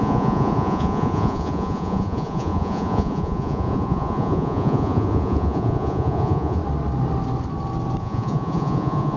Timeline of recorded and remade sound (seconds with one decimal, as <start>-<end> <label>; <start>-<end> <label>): 0.0-6.6 remade; 6.6-8.0 recorded; 8.0-9.2 remade